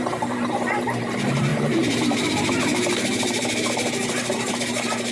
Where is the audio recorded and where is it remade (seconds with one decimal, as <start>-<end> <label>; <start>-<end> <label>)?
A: 0.0-5.1 remade